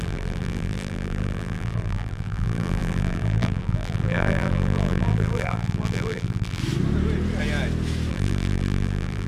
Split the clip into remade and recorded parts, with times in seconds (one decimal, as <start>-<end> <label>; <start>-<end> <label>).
0.0-6.6 remade; 6.6-8.1 recorded; 8.1-9.3 remade